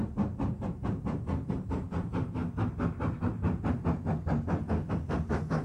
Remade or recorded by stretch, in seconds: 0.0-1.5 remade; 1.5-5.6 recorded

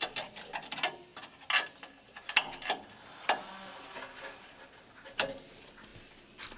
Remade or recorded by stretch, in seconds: 0.0-1.1 remade; 1.1-4.4 recorded; 4.4-5.9 remade; 5.9-6.6 recorded

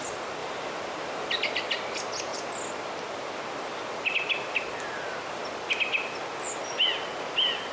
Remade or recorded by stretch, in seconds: 0.0-0.4 recorded; 0.4-1.3 remade; 1.3-7.7 recorded

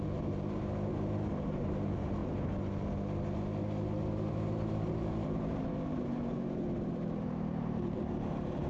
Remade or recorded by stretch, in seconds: 0.0-2.2 remade; 2.2-4.3 recorded; 4.3-8.7 remade

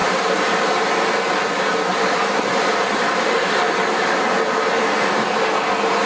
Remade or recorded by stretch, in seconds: 0.0-0.9 remade; 0.9-1.9 recorded; 1.9-4.0 remade; 4.0-6.1 recorded

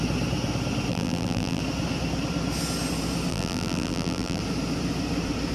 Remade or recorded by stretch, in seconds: 0.0-0.9 recorded; 0.9-1.6 remade; 1.6-3.3 recorded; 3.3-4.4 remade; 4.4-5.5 recorded

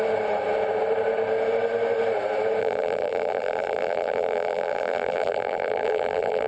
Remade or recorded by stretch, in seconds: 0.0-2.6 recorded; 2.6-6.5 remade